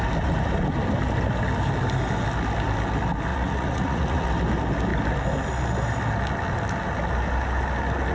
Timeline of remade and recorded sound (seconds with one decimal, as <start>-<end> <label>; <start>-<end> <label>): 0.0-3.3 recorded; 3.3-4.3 remade; 4.3-8.1 recorded